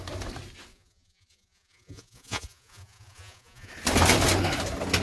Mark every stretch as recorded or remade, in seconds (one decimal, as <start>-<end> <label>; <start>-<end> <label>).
0.0-0.7 recorded; 0.7-3.7 remade; 3.7-5.0 recorded